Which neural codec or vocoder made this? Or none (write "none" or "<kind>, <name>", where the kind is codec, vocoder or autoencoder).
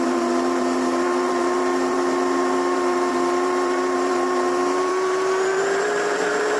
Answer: vocoder, BigVGAN v2